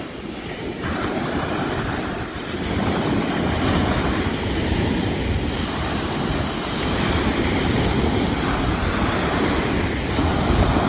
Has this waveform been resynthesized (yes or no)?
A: no